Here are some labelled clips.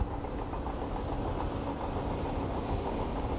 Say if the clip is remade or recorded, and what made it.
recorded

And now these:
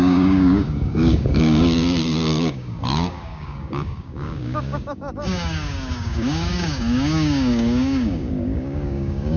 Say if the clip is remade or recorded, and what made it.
remade, codec, DAC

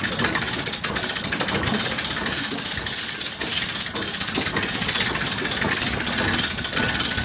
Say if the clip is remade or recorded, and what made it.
recorded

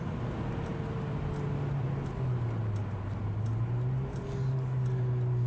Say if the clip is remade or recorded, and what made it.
recorded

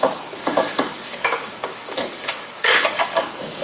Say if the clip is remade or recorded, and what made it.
remade, codec, DAC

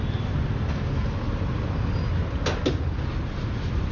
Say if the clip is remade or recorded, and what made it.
recorded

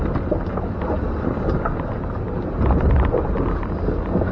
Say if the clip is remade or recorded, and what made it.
recorded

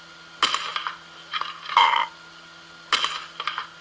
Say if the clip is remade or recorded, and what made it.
recorded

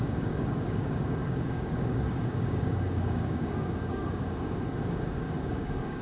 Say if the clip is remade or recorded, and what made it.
remade, codec, DAC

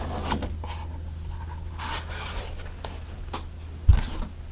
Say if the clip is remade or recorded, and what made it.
recorded